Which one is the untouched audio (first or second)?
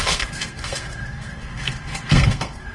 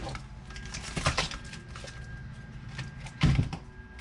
second